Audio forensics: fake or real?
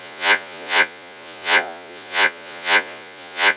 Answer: fake